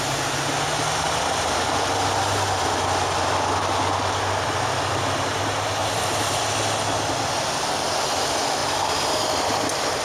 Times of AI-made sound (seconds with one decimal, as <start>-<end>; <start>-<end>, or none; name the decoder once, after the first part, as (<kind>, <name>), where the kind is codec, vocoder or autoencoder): 5.8-6.4 (vocoder, BigVGAN v2)